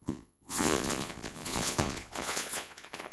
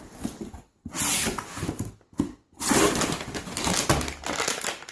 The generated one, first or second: first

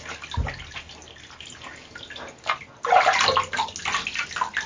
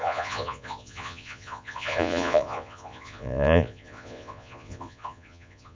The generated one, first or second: second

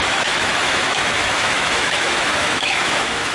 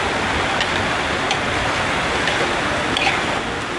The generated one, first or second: first